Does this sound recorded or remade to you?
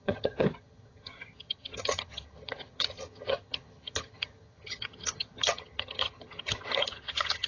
remade